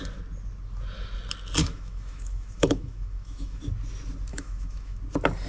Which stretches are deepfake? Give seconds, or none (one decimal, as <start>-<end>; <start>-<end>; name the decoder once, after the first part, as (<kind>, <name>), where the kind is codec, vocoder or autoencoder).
1.6-3.6 (autoencoder, DAC-VAE); 4.3-5.0